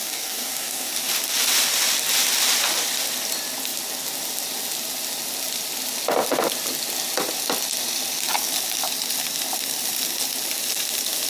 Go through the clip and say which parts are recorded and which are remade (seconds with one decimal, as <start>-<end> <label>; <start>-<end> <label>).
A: 0.0-0.9 remade; 0.9-11.3 recorded